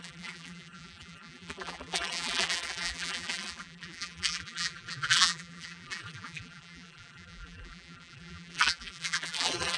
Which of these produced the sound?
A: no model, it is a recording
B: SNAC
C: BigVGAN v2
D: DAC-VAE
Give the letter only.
C